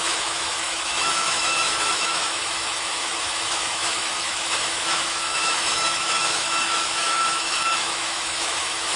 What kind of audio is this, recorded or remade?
remade